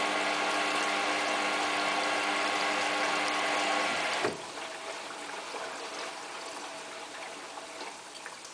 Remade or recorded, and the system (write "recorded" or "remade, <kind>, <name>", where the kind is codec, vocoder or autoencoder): recorded